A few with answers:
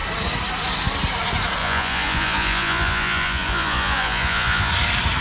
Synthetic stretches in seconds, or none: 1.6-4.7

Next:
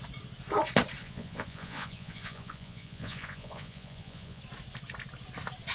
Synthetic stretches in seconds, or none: 1.0-4.4